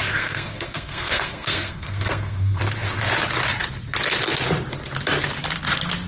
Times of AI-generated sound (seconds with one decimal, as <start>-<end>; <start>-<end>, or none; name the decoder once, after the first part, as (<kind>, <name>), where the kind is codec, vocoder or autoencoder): 0.0-2.6 (codec, SNAC)